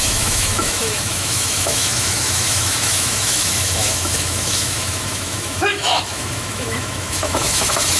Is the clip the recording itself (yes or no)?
no